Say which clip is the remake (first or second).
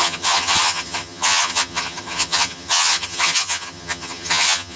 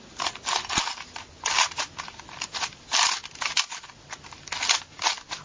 first